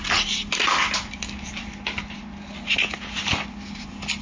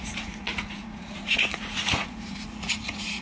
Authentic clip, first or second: first